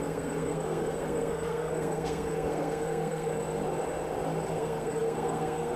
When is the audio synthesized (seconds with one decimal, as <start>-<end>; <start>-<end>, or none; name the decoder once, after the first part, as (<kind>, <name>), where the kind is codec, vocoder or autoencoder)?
0.0-3.3 (codec, SNAC); 4.5-5.8